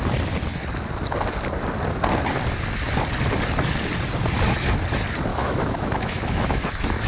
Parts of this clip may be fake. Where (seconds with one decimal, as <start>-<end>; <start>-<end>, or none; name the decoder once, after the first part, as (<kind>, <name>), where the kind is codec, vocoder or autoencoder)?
5.3-7.1 (autoencoder, DAC-VAE)